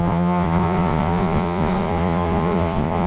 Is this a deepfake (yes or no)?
yes